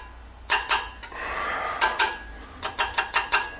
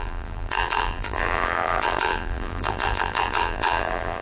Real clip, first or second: first